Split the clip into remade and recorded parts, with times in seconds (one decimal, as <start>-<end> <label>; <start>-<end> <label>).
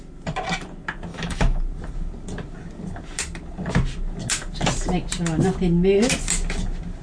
0.0-1.1 recorded; 1.1-1.6 remade; 1.6-7.0 recorded